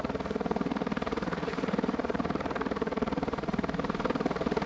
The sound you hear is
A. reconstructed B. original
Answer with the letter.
A